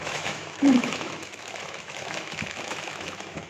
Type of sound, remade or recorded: remade